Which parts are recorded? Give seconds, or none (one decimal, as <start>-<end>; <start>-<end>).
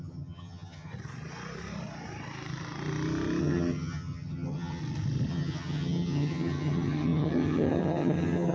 0.9-3.4; 4.8-5.3